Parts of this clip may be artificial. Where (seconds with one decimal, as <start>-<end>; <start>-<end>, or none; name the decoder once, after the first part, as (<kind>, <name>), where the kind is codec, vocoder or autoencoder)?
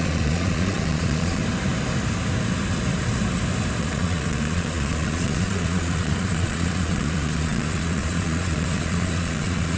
0.0-1.4 (vocoder, Vocos); 3.8-9.8